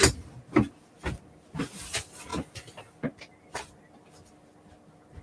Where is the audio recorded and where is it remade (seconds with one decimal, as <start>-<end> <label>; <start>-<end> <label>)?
0.0-5.2 recorded